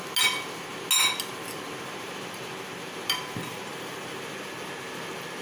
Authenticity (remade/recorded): recorded